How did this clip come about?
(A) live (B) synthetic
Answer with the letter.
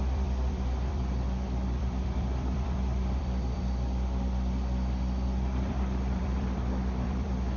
B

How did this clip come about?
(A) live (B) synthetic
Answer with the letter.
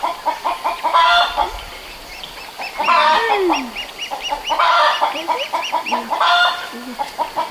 A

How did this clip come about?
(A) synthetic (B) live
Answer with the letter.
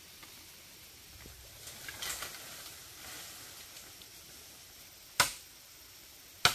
B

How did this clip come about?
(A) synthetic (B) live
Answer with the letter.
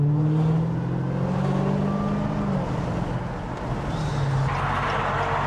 B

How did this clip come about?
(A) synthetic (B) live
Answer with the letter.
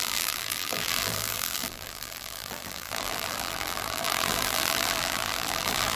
A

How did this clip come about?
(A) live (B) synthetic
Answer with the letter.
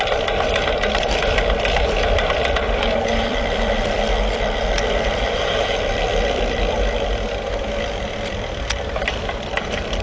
B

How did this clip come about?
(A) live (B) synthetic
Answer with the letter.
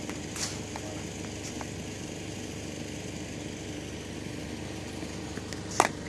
A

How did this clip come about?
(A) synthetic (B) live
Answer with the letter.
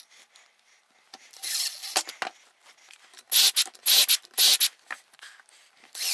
B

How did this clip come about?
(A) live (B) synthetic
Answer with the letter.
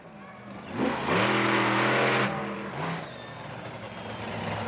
A